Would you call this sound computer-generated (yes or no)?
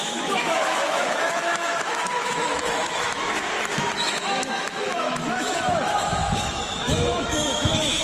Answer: yes